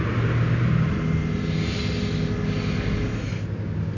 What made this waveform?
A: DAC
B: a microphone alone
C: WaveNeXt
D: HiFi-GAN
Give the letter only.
B